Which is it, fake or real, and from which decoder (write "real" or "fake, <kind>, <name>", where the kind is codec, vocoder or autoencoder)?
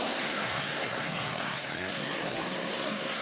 fake, codec, SNAC